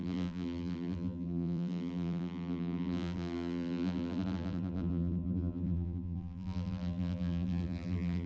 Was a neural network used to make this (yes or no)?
yes